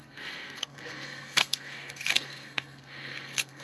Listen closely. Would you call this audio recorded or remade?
remade